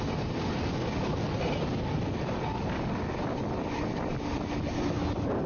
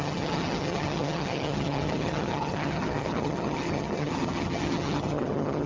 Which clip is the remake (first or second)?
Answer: second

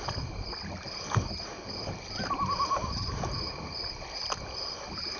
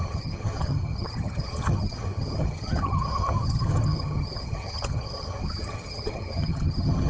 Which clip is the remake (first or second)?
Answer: second